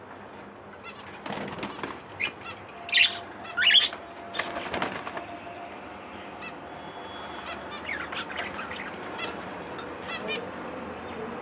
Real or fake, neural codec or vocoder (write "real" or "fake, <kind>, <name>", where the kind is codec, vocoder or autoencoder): real